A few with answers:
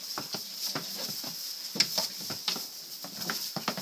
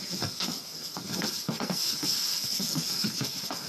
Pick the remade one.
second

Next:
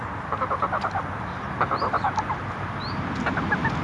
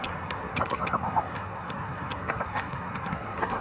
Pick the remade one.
second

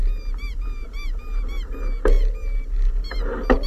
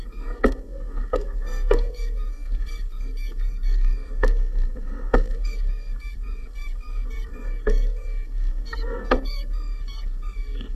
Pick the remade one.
second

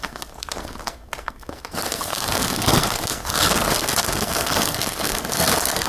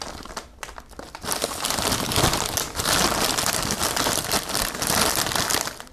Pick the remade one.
first